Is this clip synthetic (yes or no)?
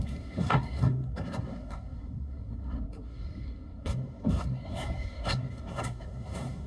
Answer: yes